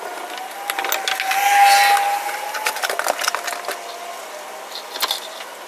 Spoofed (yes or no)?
no